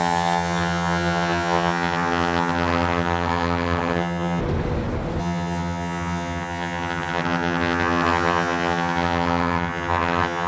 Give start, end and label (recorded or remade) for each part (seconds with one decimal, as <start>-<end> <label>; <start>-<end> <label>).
0.0-4.4 remade; 4.4-5.2 recorded; 5.2-10.5 remade